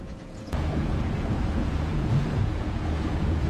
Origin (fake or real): fake